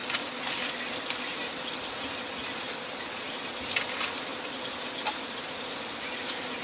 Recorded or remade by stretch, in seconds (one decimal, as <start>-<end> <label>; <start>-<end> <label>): 0.0-6.6 recorded